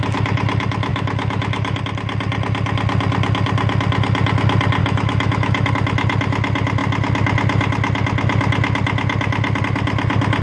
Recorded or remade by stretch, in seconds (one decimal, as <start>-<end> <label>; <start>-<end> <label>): 0.0-0.9 recorded; 0.9-1.8 remade; 1.8-4.8 recorded; 4.8-5.7 remade; 5.7-10.4 recorded